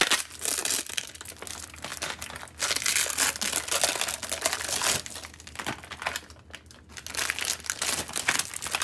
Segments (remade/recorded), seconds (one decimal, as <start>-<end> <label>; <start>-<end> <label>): 0.0-8.8 recorded